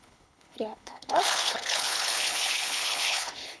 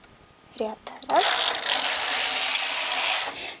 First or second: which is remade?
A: first